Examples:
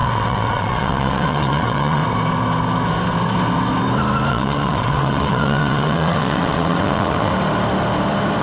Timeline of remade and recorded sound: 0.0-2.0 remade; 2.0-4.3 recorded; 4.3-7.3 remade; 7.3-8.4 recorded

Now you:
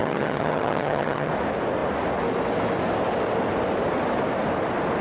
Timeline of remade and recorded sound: 0.0-1.3 remade; 1.3-5.0 recorded

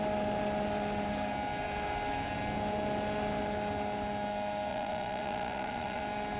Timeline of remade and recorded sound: 0.0-4.7 recorded; 4.7-6.0 remade; 6.0-6.4 recorded

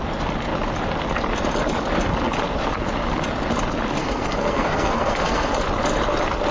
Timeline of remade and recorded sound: 0.0-4.0 recorded; 4.0-5.5 remade; 5.5-6.5 recorded

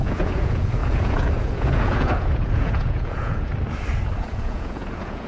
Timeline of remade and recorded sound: 0.0-3.5 remade; 3.5-4.2 recorded; 4.2-5.3 remade